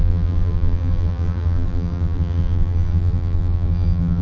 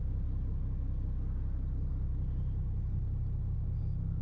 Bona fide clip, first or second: second